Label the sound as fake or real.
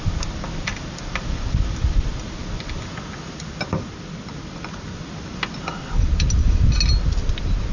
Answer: real